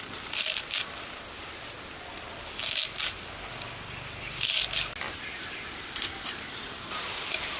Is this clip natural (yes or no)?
yes